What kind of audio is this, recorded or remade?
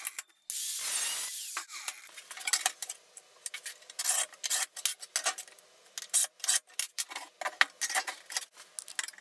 recorded